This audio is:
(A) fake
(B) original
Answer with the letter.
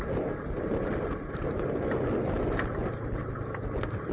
B